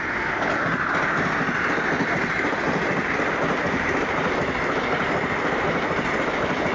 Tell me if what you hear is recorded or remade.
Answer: recorded